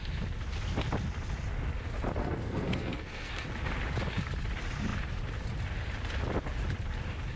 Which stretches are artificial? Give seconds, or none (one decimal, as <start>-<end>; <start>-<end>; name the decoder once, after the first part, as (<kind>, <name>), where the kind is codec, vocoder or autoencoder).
2.2-3.3 (codec, SNAC)